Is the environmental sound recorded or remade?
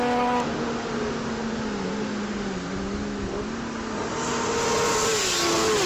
recorded